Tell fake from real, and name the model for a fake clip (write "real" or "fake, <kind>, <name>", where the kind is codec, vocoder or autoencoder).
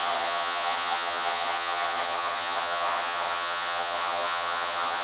fake, vocoder, HiFi-GAN